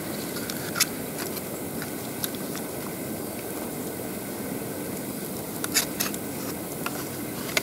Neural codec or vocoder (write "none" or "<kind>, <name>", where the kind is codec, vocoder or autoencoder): none